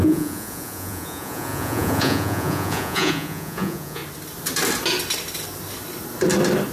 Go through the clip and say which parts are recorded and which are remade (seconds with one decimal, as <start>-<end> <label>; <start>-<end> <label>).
0.0-4.0 remade; 4.0-6.7 recorded